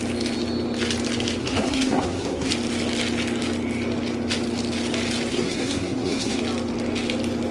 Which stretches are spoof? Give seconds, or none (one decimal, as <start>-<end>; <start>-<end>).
1.4-2.5; 5.3-6.4